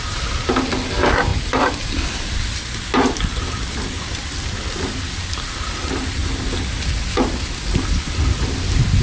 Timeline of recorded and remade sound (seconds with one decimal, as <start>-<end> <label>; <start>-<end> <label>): 0.0-9.0 recorded